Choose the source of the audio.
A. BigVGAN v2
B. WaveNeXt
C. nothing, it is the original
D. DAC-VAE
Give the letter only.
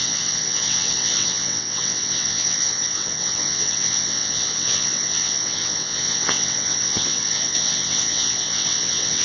B